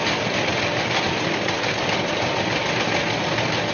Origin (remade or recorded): recorded